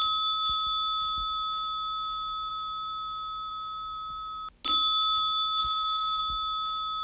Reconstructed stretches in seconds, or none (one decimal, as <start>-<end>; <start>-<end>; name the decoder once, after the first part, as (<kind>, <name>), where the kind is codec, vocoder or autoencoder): 5.6-6.2 (codec, SNAC)